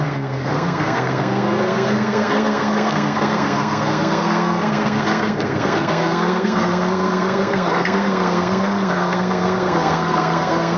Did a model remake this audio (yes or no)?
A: yes